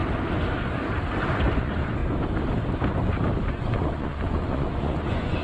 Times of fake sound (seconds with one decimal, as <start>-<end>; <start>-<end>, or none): 1.5-2.0; 3.5-5.4